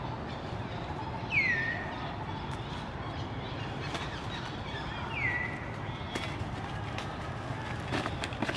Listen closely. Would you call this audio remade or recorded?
recorded